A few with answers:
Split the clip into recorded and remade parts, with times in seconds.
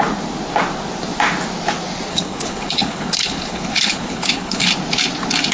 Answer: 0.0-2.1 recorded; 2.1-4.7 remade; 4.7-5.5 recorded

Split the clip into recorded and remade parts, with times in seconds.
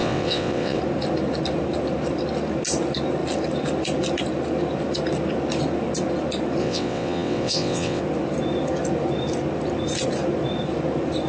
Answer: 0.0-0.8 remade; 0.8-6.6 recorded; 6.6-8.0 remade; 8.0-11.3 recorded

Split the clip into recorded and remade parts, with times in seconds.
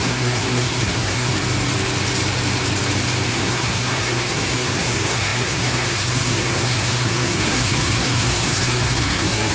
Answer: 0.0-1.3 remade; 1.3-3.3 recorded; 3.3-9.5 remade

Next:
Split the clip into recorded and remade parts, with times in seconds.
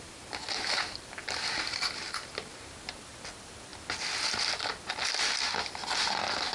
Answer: 0.0-6.5 recorded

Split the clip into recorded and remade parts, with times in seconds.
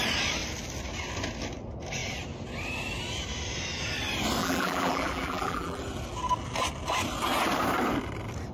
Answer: 0.0-4.4 recorded; 4.4-5.8 remade; 5.8-8.5 recorded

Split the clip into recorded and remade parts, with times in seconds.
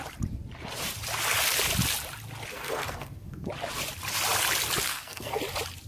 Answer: 0.0-2.5 recorded; 2.5-3.5 remade; 3.5-4.9 recorded; 4.9-5.4 remade; 5.4-5.9 recorded